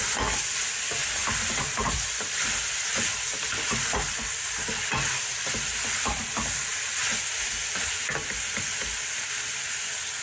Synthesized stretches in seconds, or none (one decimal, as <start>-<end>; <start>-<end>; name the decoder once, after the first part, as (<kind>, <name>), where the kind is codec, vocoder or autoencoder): 1.2-4.9 (vocoder, BigVGAN v2)